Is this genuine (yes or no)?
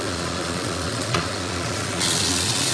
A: no